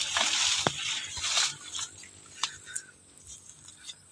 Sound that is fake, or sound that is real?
real